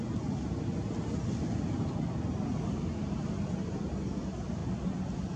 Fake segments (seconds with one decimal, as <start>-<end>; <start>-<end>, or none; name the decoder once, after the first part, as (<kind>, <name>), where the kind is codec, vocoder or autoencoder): none